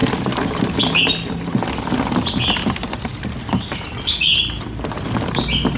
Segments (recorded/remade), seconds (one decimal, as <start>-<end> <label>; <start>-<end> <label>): 0.0-5.8 recorded

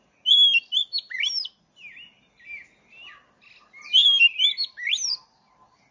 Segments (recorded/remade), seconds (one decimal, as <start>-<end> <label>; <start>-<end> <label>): 0.0-5.9 recorded

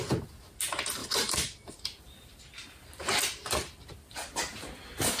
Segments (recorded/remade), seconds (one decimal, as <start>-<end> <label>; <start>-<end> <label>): 0.0-1.0 recorded; 1.0-1.7 remade; 1.7-5.2 recorded

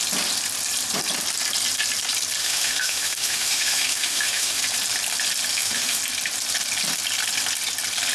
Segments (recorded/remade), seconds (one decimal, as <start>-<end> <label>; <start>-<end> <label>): 0.0-2.4 recorded; 2.4-4.6 remade; 4.6-5.5 recorded; 5.5-6.0 remade; 6.0-8.1 recorded

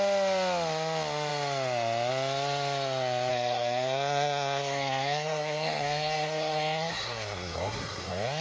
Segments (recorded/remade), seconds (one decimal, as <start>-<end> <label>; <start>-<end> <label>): 0.0-3.3 recorded; 3.3-8.4 remade

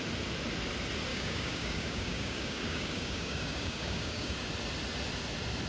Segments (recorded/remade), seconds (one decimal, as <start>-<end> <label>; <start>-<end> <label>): 0.0-1.1 recorded; 1.1-4.5 remade; 4.5-5.7 recorded

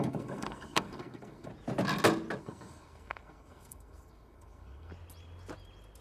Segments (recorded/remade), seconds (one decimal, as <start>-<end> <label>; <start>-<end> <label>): 0.0-1.5 remade; 1.5-2.4 recorded; 2.4-4.9 remade; 4.9-6.0 recorded